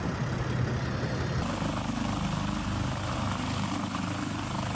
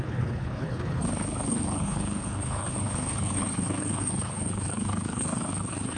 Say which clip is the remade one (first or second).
second